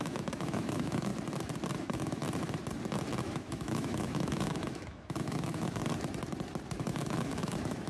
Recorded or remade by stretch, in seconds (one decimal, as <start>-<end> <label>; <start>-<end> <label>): 0.0-1.1 remade; 1.1-1.8 recorded; 1.8-2.2 remade; 2.2-3.2 recorded; 3.2-5.8 remade; 5.8-6.8 recorded; 6.8-7.9 remade

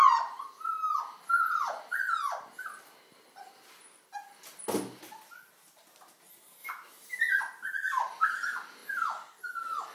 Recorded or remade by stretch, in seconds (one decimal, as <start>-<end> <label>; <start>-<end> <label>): 0.0-6.6 recorded; 6.6-7.2 remade; 7.2-9.9 recorded

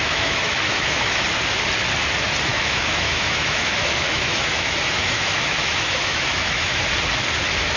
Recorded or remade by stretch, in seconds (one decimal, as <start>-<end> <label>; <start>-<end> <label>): 0.0-1.1 remade; 1.1-2.5 recorded; 2.5-6.8 remade; 6.8-7.8 recorded

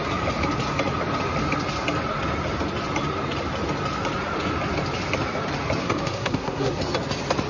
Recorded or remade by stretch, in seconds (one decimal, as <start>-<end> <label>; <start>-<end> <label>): 0.0-5.8 recorded; 5.8-6.8 remade; 6.8-7.5 recorded

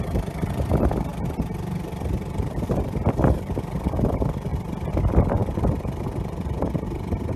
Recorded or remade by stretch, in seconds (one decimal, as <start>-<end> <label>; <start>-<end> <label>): 0.0-4.5 recorded; 4.5-5.0 remade; 5.0-5.4 recorded; 5.4-6.0 remade; 6.0-7.4 recorded